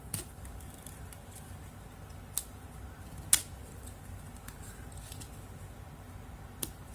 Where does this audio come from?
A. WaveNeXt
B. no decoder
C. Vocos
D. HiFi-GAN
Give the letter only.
B